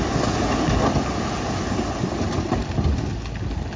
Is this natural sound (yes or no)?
yes